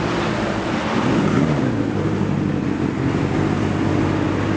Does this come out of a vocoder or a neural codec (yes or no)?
no